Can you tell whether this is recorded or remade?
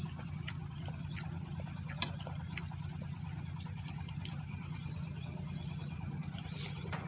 remade